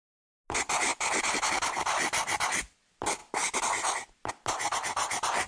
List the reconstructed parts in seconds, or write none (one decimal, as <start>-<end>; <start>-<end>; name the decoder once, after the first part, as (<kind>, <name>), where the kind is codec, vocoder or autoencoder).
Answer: none